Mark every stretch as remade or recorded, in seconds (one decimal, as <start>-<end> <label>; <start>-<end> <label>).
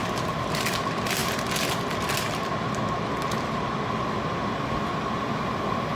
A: 0.0-6.0 recorded